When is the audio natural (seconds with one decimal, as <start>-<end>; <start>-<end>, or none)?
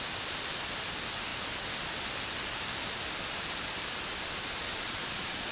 0.0-4.7